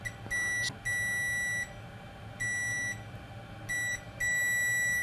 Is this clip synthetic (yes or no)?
no